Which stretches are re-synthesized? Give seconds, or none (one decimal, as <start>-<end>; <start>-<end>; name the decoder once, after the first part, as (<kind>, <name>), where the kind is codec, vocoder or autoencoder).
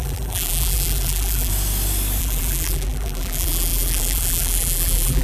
0.0-1.5 (vocoder, BigVGAN v2); 2.2-5.2